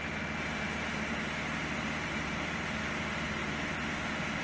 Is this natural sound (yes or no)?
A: yes